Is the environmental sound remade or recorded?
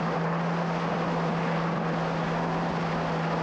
recorded